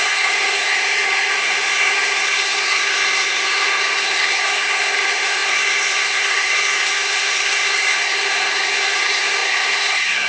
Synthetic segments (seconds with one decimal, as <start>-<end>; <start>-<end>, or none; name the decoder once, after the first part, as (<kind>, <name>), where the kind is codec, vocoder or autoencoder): 0.0-10.3 (codec, SNAC)